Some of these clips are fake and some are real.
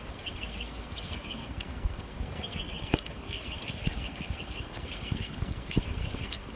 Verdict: fake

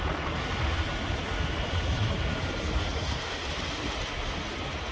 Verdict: real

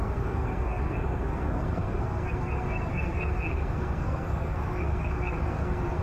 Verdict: fake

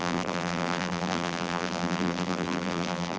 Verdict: fake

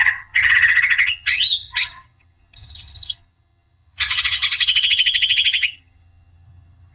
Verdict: fake